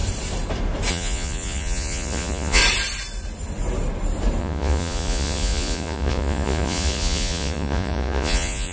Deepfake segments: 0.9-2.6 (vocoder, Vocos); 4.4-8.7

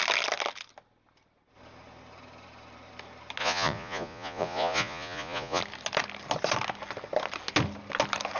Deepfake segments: 3.4-5.6 (vocoder, Vocos)